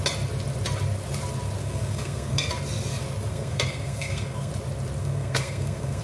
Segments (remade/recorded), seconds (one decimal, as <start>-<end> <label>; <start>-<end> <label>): 0.0-1.6 recorded; 1.6-2.5 remade; 2.5-3.3 recorded; 3.3-4.5 remade; 4.5-5.0 recorded; 5.0-6.0 remade